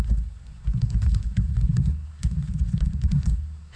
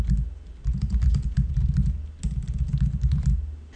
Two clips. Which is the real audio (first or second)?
second